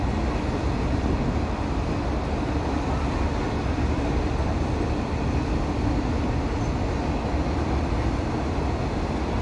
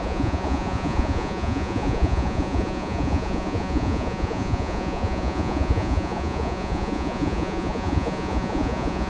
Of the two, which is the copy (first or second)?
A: second